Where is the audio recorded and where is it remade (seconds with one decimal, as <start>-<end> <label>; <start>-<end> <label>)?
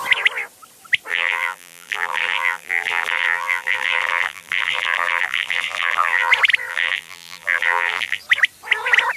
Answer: 0.0-1.1 recorded; 1.1-6.3 remade; 6.3-6.7 recorded; 6.7-8.2 remade; 8.2-9.2 recorded